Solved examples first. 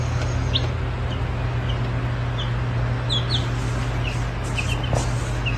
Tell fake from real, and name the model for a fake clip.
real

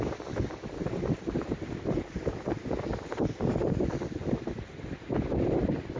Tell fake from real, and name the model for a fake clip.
real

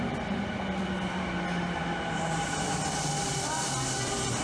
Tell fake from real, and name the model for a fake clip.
real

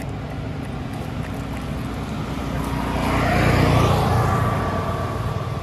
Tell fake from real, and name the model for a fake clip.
real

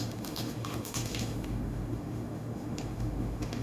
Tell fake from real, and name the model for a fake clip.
fake, autoencoder, DAC-VAE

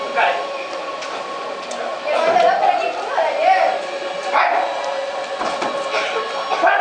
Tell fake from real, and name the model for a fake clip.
real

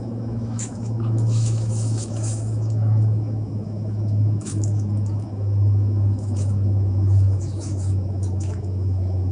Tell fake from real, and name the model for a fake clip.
fake, autoencoder, DAC-VAE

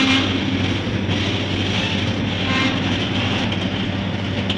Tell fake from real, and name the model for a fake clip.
real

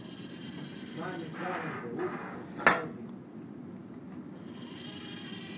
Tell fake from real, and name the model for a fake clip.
real